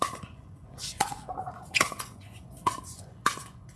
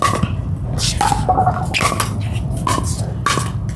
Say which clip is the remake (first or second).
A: first